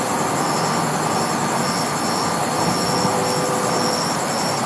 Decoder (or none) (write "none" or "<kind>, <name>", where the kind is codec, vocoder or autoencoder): none